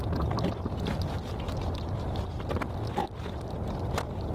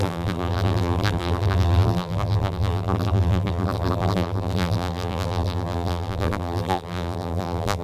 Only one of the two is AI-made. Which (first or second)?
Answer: second